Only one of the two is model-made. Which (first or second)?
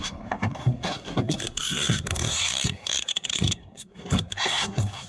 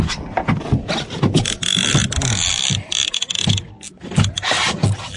first